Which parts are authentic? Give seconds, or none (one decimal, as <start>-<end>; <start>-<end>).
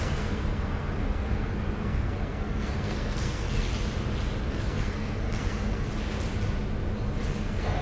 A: 3.7-4.5; 5.9-7.3